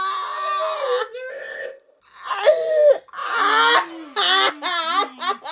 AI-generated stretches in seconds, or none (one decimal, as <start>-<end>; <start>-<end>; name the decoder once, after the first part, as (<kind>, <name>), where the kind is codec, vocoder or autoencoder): 1.3-2.0 (codec, ZipCodec)